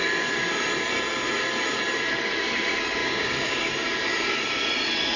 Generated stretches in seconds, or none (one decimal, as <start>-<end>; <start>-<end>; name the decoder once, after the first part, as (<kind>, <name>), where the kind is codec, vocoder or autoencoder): 3.0-3.7 (codec, DAC)